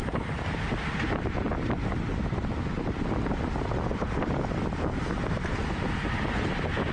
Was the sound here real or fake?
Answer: fake